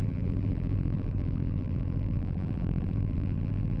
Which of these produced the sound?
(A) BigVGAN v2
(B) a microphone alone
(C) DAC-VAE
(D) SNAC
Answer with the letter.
A